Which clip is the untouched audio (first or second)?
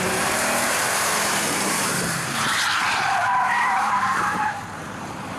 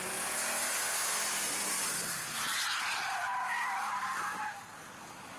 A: second